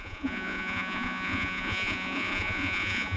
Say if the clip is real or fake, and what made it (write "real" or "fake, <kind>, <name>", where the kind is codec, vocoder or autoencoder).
fake, vocoder, Vocos